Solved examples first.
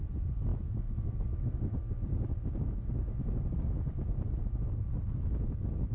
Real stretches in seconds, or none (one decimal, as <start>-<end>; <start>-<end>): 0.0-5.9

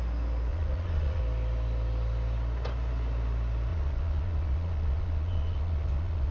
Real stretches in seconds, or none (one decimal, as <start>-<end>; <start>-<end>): 0.0-0.5; 1.2-3.7

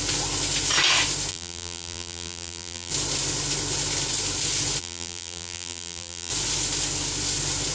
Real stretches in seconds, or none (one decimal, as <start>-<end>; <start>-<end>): 0.0-1.3; 2.9-4.8; 6.3-7.7

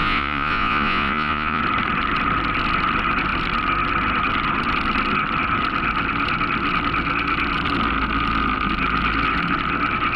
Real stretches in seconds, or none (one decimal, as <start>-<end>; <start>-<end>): 1.6-10.2

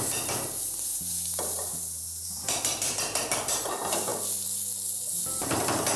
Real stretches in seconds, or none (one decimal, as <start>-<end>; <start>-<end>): 4.1-5.4

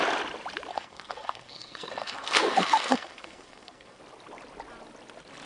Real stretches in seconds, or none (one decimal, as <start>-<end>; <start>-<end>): 0.0-0.7; 4.0-5.5